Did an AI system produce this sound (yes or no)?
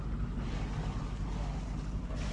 no